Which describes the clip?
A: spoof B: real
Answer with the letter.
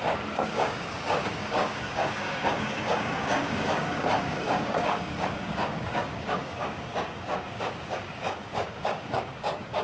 A